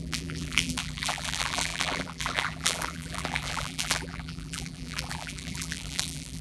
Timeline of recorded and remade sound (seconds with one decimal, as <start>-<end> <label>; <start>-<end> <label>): 0.0-6.4 remade